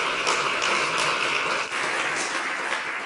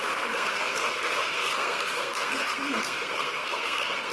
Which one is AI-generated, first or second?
second